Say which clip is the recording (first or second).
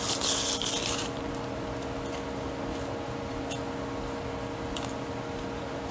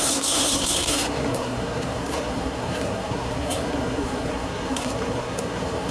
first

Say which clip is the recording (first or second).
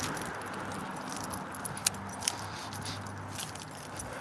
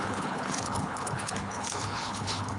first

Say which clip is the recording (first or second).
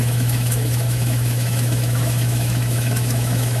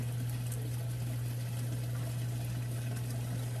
second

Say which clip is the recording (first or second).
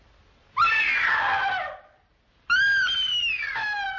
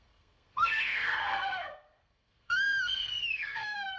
first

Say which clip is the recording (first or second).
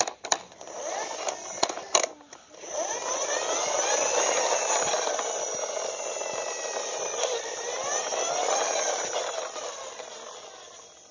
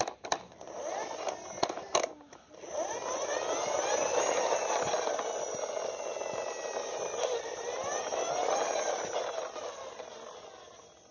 second